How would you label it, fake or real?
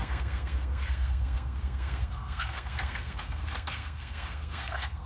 fake